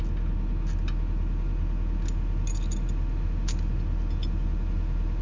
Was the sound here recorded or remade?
recorded